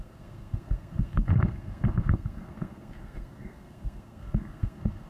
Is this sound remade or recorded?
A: remade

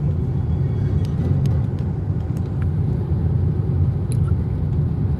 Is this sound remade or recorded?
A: recorded